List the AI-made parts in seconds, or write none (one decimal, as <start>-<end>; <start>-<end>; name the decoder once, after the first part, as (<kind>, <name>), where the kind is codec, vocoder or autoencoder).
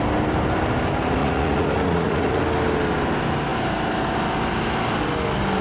1.2-2.4 (vocoder, Vocos)